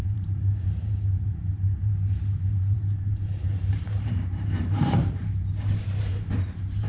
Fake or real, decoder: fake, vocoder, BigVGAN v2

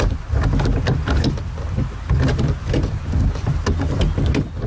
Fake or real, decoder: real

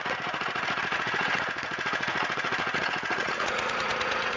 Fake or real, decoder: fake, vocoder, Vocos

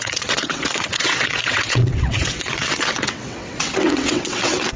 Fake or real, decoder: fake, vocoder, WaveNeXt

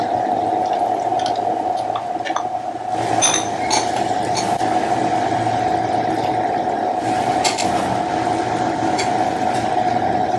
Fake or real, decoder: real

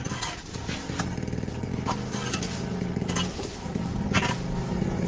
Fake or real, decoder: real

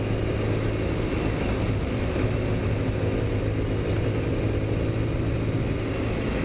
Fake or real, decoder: real